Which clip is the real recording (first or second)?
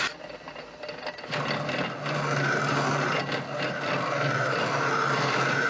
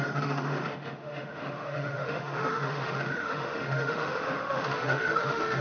first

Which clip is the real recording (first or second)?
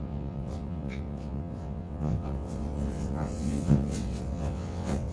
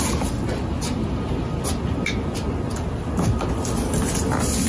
second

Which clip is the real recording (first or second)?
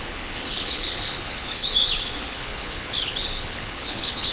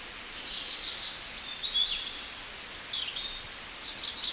second